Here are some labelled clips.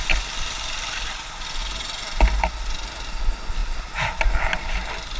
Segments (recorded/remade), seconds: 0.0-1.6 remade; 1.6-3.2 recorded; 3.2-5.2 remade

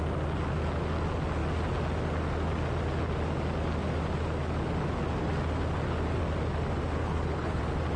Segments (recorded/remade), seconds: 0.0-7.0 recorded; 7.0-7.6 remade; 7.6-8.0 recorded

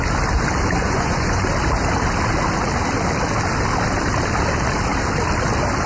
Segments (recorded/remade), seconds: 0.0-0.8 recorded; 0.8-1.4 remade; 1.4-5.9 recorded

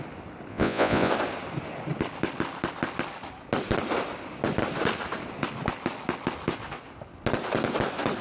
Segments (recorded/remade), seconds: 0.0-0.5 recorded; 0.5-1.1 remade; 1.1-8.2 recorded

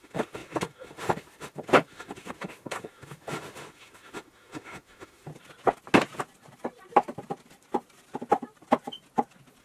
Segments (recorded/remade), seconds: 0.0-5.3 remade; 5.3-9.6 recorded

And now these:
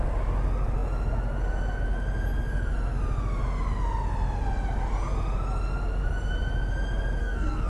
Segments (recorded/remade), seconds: 0.0-7.2 recorded; 7.2-7.7 remade

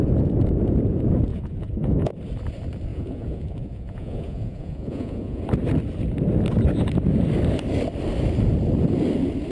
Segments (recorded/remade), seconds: 0.0-1.3 recorded; 1.3-2.1 remade; 2.1-2.9 recorded; 2.9-5.4 remade; 5.4-9.5 recorded

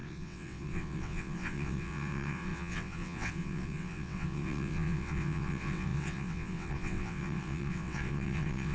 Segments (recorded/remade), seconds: 0.0-8.7 remade